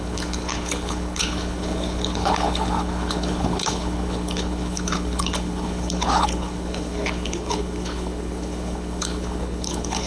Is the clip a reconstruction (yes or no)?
yes